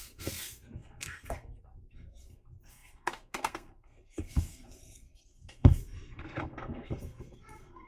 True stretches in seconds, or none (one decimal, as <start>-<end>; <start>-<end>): none